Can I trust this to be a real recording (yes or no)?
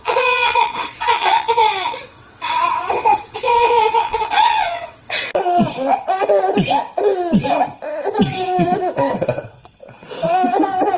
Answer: no